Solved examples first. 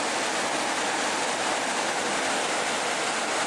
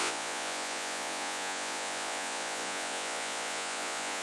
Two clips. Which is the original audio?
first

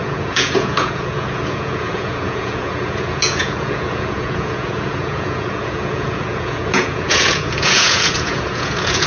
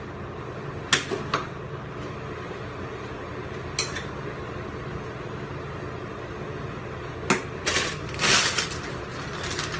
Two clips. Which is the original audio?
second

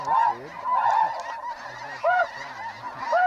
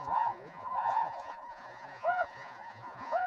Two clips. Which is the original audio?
first